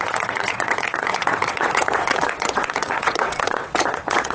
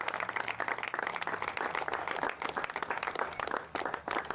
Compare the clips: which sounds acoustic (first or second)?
second